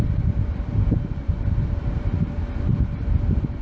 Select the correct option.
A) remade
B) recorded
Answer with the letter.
A